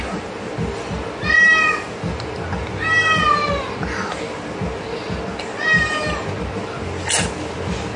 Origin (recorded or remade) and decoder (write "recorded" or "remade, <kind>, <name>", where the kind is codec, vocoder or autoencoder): recorded